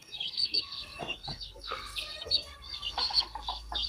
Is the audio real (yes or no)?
no